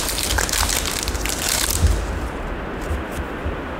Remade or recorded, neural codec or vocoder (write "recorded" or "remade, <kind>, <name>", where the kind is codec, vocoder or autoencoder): recorded